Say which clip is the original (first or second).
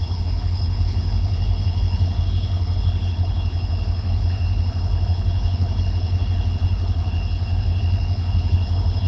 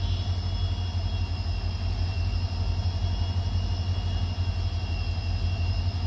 second